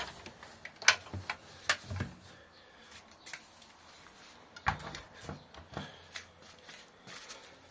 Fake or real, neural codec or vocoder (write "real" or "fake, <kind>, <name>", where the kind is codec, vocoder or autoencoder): real